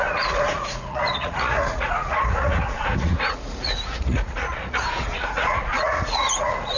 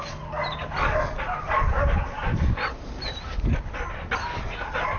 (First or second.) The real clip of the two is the second